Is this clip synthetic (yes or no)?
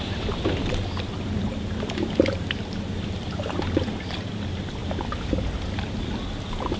yes